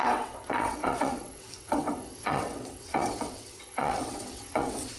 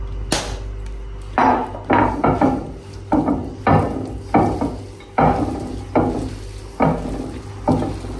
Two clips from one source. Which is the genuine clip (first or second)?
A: second